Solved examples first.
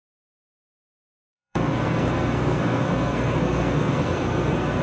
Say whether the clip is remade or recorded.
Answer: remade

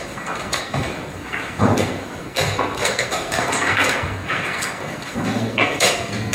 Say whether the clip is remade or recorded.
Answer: remade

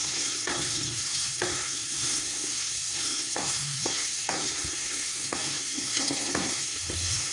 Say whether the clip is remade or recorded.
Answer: remade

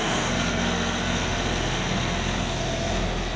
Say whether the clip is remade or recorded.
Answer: remade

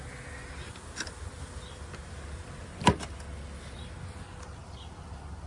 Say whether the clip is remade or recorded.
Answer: recorded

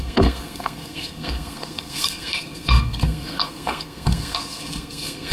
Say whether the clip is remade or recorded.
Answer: remade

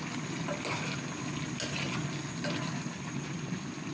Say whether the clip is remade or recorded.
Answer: recorded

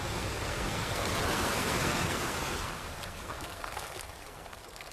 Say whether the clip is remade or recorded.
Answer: remade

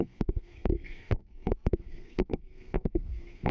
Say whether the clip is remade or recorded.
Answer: remade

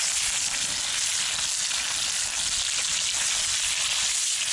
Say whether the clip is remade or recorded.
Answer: recorded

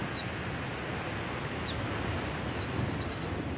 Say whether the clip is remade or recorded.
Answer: recorded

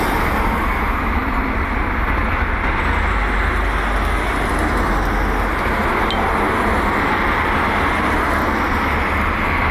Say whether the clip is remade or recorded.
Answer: recorded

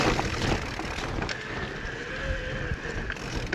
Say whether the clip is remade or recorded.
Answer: recorded